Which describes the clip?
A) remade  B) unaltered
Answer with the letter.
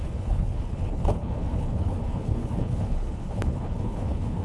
A